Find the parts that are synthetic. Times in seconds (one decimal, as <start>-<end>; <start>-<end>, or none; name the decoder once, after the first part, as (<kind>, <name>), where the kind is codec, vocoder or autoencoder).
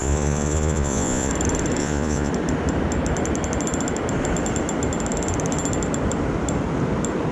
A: 0.0-1.3 (vocoder, Vocos); 1.8-2.3